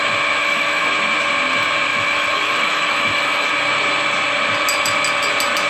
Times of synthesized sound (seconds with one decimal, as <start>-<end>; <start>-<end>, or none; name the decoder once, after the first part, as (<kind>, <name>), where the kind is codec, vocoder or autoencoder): 0.4-0.9 (autoencoder, DAC-VAE); 1.9-3.5